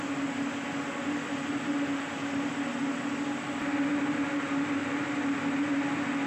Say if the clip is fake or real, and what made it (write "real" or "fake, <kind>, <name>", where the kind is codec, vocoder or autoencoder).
real